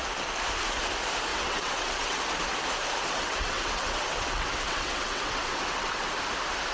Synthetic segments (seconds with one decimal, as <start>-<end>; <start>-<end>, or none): 1.3-2.2; 3.0-6.1